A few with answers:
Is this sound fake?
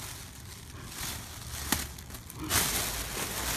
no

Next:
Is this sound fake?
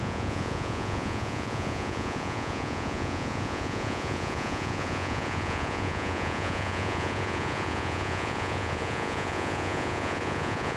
yes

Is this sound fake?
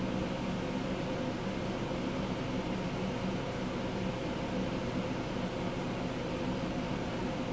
no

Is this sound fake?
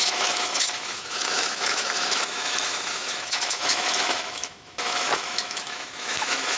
yes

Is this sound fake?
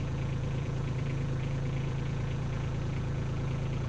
yes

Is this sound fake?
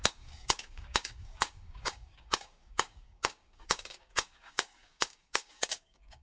yes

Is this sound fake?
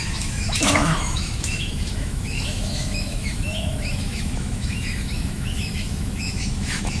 yes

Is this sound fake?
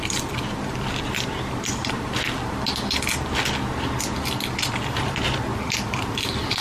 no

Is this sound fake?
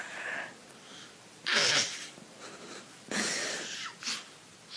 no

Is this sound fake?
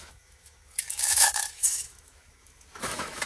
yes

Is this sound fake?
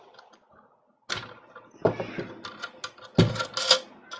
no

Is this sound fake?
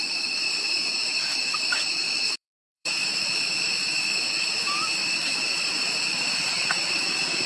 yes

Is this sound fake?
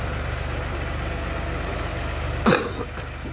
no